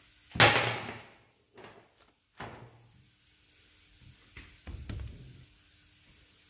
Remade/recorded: recorded